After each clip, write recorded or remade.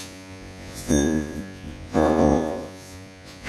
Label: remade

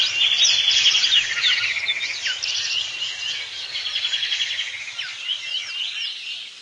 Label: recorded